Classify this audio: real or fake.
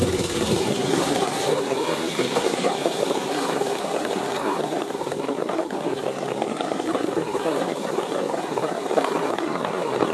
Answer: fake